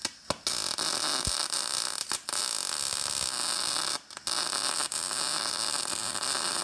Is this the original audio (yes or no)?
yes